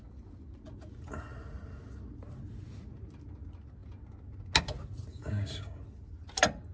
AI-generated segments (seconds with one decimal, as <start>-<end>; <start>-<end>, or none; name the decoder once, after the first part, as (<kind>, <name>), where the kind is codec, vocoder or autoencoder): 5.1-5.8 (codec, DAC)